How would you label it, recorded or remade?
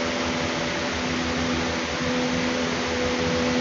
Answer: recorded